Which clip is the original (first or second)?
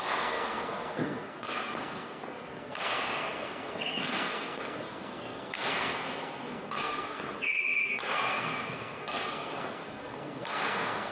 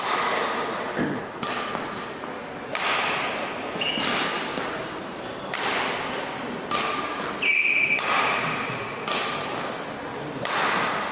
second